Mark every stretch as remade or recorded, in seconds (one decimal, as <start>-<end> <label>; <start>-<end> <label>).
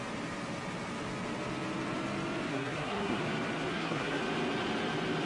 0.0-2.5 recorded; 2.5-3.2 remade; 3.2-3.7 recorded; 3.7-4.2 remade; 4.2-5.3 recorded